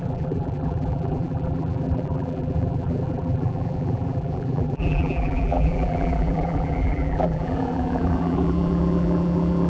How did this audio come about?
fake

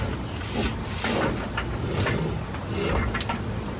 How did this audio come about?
real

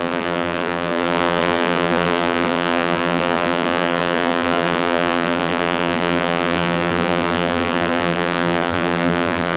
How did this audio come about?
fake